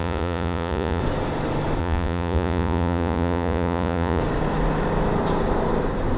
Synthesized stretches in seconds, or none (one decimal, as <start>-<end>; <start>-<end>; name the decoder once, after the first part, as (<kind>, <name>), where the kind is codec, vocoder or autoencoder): 0.0-1.0 (vocoder, Vocos); 1.8-4.2